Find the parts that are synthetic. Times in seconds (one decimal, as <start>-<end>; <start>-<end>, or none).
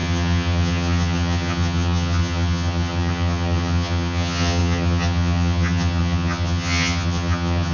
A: 0.0-7.7